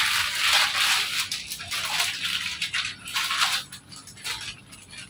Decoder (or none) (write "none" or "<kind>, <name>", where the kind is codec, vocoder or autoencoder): none